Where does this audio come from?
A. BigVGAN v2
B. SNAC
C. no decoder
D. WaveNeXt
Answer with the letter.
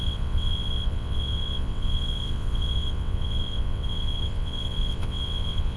D